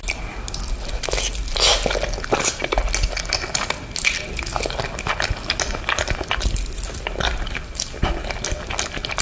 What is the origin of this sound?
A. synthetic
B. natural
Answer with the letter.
B